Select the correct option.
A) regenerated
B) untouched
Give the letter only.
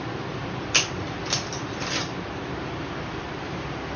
B